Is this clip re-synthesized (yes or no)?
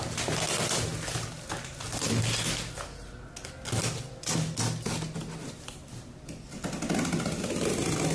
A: no